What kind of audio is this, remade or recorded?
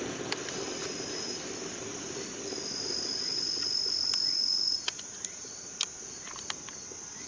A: recorded